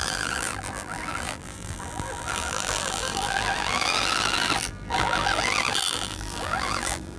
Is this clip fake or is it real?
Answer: fake